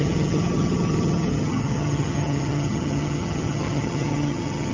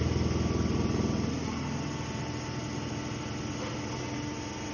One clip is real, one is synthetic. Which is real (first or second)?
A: second